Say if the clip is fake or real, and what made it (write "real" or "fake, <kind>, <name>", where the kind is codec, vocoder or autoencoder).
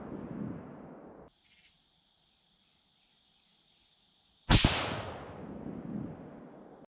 real